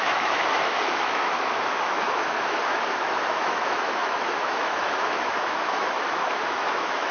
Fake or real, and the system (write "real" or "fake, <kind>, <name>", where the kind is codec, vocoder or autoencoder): fake, autoencoder, DAC-VAE